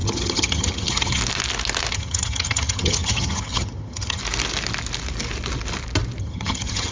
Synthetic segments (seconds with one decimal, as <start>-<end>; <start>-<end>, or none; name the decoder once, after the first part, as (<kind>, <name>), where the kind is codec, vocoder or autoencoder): 0.0-1.2 (vocoder, HiFi-GAN); 1.9-4.2; 6.2-6.9